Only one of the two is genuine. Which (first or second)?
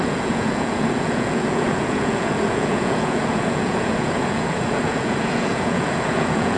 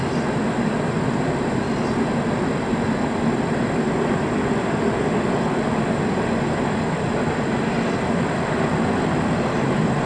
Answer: second